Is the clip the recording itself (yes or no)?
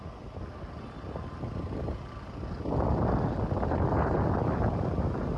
yes